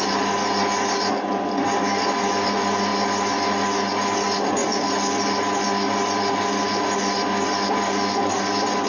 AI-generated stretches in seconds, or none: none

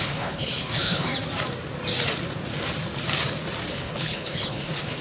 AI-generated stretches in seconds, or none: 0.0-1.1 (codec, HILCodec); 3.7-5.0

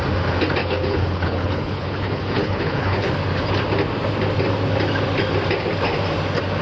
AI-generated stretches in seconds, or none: 0.6-3.1 (codec, HILCodec)

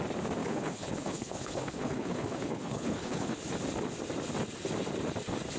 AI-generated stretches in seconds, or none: 0.4-3.4 (codec, HILCodec)